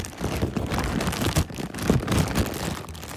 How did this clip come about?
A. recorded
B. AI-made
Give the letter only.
A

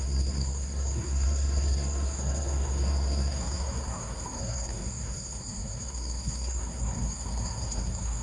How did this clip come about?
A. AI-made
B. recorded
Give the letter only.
A